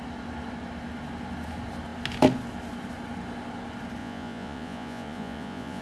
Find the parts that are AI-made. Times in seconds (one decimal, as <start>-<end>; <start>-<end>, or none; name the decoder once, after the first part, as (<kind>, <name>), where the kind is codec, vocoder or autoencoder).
4.0-5.8 (vocoder, Vocos)